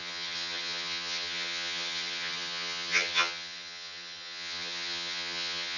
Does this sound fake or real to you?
fake